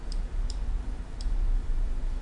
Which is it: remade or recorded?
remade